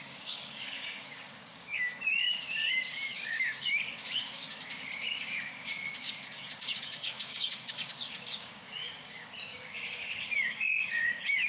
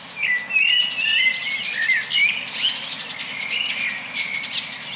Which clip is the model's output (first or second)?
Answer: first